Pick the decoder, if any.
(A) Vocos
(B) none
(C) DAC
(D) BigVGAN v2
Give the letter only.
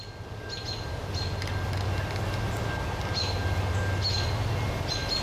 B